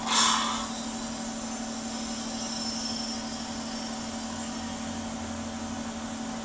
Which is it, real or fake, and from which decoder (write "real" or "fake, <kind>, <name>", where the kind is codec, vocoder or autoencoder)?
real